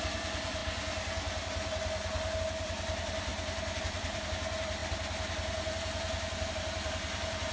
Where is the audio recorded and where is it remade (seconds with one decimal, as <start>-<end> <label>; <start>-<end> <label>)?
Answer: 0.0-0.6 remade; 0.6-2.4 recorded; 2.4-3.3 remade; 3.3-3.8 recorded; 3.8-4.8 remade; 4.8-6.5 recorded; 6.5-7.5 remade

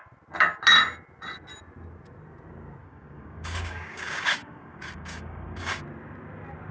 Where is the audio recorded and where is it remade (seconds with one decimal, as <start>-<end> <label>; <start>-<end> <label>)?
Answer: 0.0-2.8 recorded; 2.8-5.8 remade; 5.8-6.7 recorded

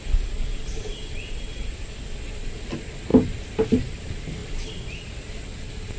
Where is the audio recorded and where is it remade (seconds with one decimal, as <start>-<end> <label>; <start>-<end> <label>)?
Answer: 0.0-6.0 recorded

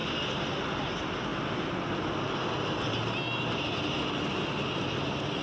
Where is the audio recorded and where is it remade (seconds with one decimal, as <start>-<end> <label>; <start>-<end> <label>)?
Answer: 0.0-5.4 recorded